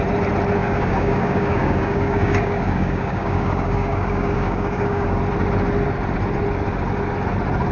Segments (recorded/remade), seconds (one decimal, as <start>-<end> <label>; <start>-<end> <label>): 0.0-0.6 recorded; 0.6-5.2 remade; 5.2-7.7 recorded